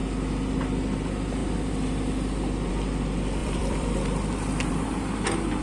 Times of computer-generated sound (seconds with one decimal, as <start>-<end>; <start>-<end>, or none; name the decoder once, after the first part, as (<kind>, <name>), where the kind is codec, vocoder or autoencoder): 1.4-2.7 (vocoder, BigVGAN v2); 3.4-4.7